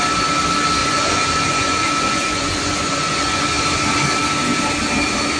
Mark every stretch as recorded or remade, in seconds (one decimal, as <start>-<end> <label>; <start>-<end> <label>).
0.0-0.8 recorded; 0.8-3.4 remade; 3.4-5.4 recorded